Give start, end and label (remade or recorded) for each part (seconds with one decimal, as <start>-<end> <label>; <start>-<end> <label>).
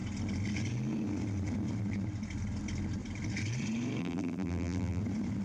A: 0.0-4.0 recorded; 4.0-5.0 remade; 5.0-5.4 recorded